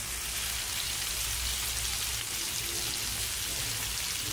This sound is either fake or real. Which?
real